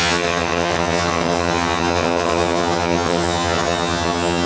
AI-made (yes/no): yes